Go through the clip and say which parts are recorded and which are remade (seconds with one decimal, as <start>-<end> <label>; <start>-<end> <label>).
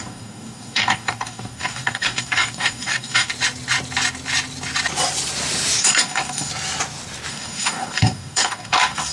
0.0-3.3 remade; 3.3-5.8 recorded; 5.8-6.5 remade; 6.5-7.3 recorded; 7.3-9.1 remade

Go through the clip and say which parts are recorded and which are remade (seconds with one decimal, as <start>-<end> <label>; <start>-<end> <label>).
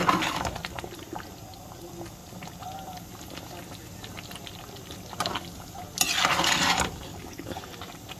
0.0-7.1 recorded; 7.1-7.6 remade; 7.6-8.2 recorded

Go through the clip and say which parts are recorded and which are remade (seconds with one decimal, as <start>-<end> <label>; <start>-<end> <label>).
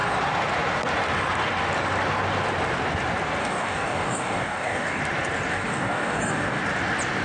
0.0-3.4 recorded; 3.4-5.0 remade; 5.0-5.5 recorded; 5.5-6.6 remade; 6.6-7.2 recorded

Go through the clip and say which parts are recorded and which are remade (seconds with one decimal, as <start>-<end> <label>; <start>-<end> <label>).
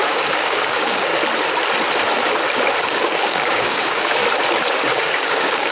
0.0-1.1 remade; 1.1-2.9 recorded; 2.9-4.2 remade; 4.2-4.8 recorded; 4.8-5.7 remade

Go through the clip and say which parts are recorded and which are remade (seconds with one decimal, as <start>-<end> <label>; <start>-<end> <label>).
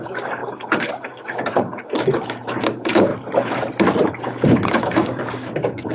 0.0-3.1 remade; 3.1-4.2 recorded; 4.2-5.9 remade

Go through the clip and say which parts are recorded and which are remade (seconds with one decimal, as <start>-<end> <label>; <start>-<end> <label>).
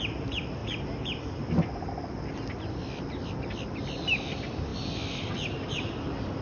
0.0-6.4 recorded